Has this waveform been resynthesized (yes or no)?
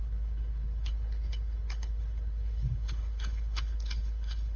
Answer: yes